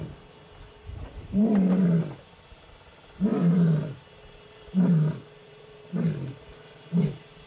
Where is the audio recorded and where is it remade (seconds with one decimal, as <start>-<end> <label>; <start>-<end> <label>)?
0.0-0.8 recorded; 0.8-1.8 remade; 1.8-3.3 recorded; 3.3-6.6 remade; 6.6-7.5 recorded